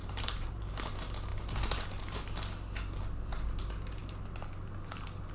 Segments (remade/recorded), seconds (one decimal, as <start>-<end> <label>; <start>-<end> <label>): 0.0-0.7 remade; 0.7-5.3 recorded